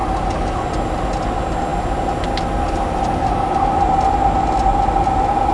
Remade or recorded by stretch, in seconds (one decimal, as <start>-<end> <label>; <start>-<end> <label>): 0.0-5.5 recorded